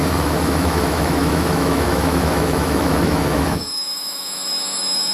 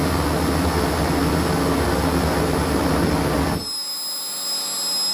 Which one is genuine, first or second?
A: second